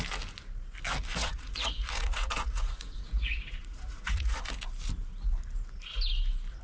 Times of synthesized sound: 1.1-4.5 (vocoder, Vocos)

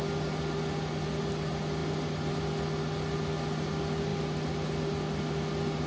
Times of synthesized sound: none

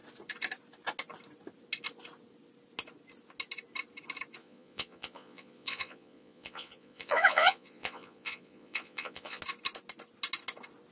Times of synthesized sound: 4.4-9.4 (vocoder, Vocos)

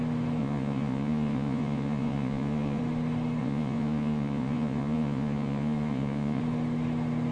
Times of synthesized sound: 0.4-2.8 (vocoder, Vocos); 3.4-6.4

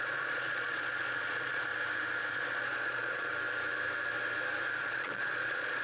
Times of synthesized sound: 0.0-1.7 (vocoder, Vocos); 2.3-3.3; 4.8-5.8

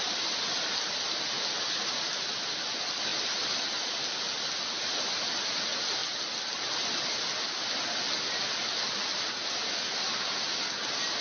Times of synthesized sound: none

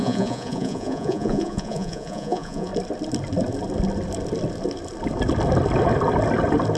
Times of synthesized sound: 0.0-2.7 (vocoder, Vocos)